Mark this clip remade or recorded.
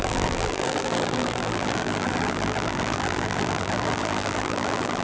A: remade